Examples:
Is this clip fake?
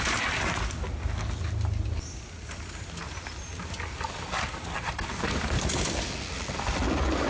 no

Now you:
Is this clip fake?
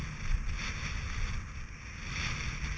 no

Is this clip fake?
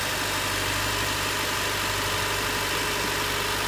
no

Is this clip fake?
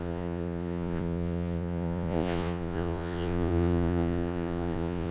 yes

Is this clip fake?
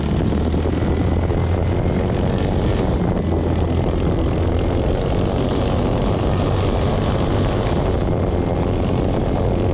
no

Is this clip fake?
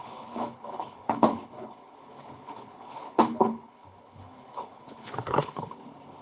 yes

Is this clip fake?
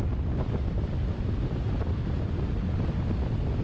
no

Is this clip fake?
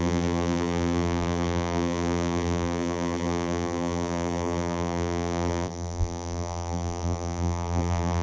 yes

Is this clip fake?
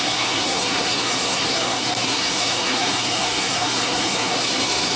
yes